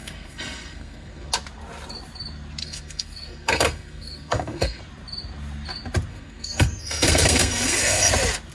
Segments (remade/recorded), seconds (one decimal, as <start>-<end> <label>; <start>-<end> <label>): 0.0-1.3 remade; 1.3-2.6 recorded; 2.6-4.8 remade; 4.8-6.1 recorded; 6.1-8.1 remade; 8.1-8.5 recorded